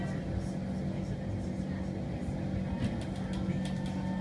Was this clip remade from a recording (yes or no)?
no